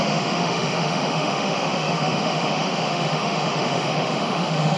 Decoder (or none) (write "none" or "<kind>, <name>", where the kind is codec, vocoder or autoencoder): autoencoder, DAC-VAE